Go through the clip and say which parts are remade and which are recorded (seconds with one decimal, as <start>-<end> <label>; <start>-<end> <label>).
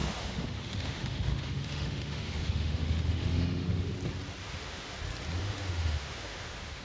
0.0-3.9 remade; 3.9-4.4 recorded; 4.4-5.0 remade; 5.0-5.4 recorded; 5.4-6.8 remade